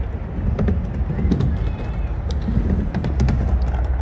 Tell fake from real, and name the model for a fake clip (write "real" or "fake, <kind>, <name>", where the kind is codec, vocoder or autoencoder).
real